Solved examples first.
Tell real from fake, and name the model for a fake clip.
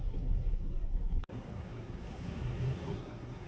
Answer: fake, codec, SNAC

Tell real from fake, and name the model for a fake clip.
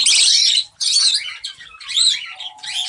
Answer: real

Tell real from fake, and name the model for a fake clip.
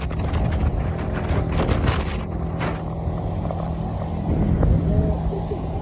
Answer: real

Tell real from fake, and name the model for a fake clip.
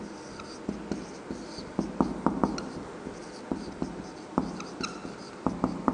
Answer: real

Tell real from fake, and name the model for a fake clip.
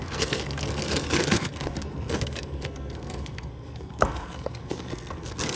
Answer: fake, codec, SNAC